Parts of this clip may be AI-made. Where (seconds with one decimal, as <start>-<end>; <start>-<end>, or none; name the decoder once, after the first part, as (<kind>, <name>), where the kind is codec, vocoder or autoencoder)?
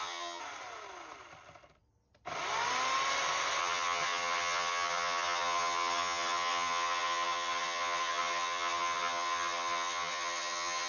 0.0-0.4 (vocoder, HiFi-GAN); 3.6-10.9